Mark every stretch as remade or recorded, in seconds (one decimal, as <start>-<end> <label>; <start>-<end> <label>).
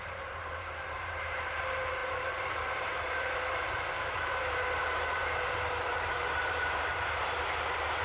0.0-8.0 remade